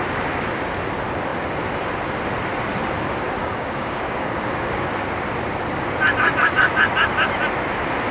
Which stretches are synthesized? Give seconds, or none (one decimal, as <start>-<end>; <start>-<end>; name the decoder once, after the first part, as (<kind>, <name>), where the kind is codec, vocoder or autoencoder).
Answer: 3.4-4.9 (codec, DAC)